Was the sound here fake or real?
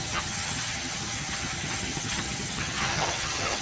fake